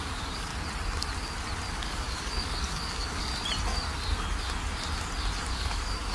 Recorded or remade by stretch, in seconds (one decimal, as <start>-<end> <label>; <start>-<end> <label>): 0.0-0.5 remade; 0.5-1.7 recorded; 1.7-3.3 remade; 3.3-5.5 recorded; 5.5-6.1 remade